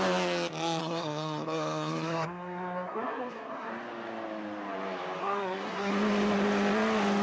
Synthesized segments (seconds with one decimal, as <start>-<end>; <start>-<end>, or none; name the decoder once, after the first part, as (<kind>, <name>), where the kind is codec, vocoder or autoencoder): 0.8-3.7 (codec, SNAC); 5.2-5.9

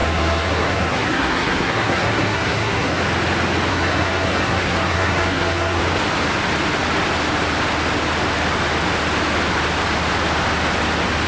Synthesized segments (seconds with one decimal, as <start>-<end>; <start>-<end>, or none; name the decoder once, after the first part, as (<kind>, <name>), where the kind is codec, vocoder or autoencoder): 0.0-3.0 (codec, SNAC); 3.7-5.8

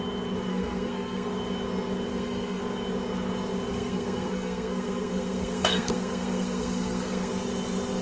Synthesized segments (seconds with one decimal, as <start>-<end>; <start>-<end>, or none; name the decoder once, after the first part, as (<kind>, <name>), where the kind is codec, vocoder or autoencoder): 0.5-1.3 (codec, SNAC); 2.1-2.6; 3.7-7.3

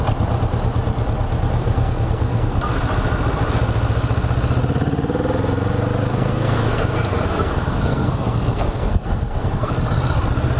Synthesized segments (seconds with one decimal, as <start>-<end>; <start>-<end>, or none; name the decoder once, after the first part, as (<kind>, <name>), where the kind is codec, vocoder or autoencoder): 1.6-2.7 (codec, SNAC); 6.1-9.7

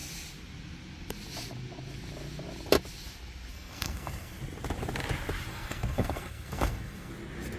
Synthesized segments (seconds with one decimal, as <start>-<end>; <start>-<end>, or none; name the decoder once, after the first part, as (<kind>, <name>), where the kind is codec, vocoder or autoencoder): 3.5-4.4 (codec, SNAC); 5.5-7.1

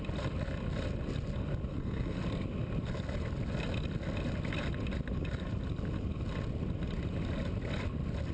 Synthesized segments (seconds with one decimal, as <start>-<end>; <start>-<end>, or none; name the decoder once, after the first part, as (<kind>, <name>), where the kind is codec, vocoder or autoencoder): 1.7-2.2 (codec, SNAC)